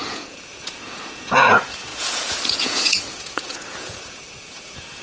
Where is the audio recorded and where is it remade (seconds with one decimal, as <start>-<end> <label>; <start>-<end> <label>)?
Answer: 0.0-5.0 remade